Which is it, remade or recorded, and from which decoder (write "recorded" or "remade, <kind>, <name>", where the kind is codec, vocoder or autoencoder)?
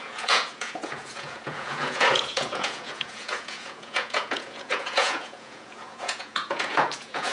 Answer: remade, vocoder, Vocos